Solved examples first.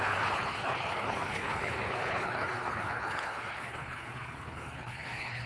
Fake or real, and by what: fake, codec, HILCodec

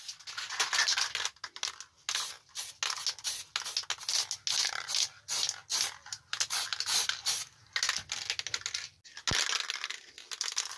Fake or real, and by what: real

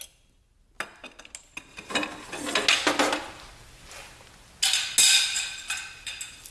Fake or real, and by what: real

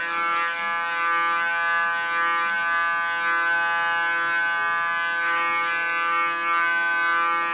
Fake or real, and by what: real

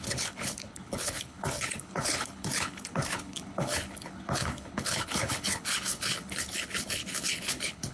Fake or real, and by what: fake, codec, HILCodec